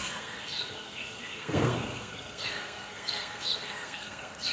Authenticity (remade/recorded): remade